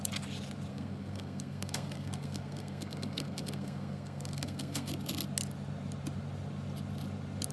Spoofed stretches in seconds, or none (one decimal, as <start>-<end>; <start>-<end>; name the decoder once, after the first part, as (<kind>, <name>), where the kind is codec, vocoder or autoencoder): 0.7-4.9 (codec, SNAC)